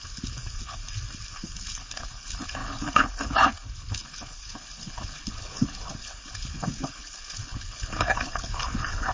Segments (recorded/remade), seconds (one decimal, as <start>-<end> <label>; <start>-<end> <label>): 0.0-0.8 remade; 0.8-1.3 recorded; 1.3-9.1 remade